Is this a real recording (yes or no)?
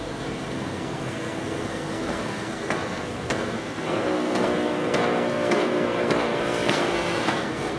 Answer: no